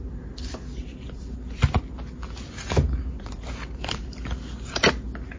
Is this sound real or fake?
real